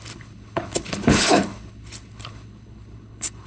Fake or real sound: fake